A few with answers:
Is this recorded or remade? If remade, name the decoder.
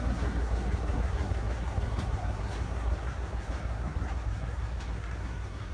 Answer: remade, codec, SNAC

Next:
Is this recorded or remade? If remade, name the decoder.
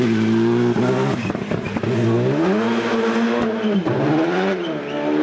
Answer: recorded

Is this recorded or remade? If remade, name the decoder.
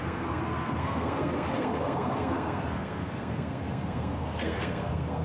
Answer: remade, codec, SNAC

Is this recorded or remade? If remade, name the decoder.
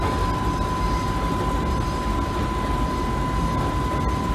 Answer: recorded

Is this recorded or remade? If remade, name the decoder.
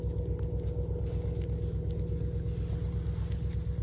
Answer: recorded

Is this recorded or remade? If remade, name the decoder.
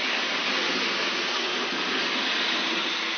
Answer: recorded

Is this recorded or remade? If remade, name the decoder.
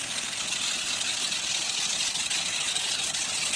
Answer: recorded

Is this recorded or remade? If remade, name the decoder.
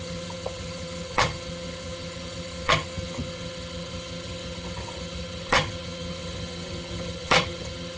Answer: remade, vocoder, HiFi-GAN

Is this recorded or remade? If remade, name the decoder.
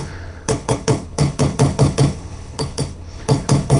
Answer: remade, codec, HILCodec